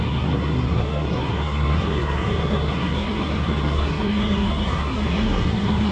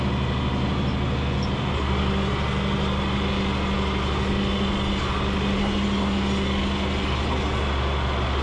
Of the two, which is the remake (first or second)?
first